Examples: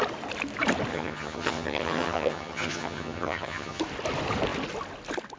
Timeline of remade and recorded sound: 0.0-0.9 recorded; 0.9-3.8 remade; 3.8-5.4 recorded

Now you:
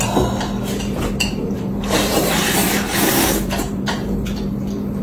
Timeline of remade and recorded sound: 0.0-1.4 recorded; 1.4-4.4 remade; 4.4-5.0 recorded

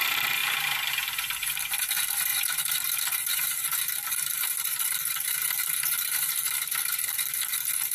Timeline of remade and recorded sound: 0.0-0.4 remade; 0.4-0.9 recorded; 0.9-7.9 remade

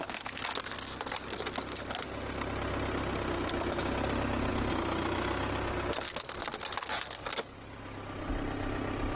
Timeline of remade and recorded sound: 0.0-9.2 recorded

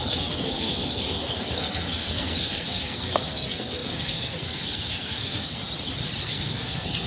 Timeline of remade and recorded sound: 0.0-5.6 remade; 5.6-6.2 recorded; 6.2-7.1 remade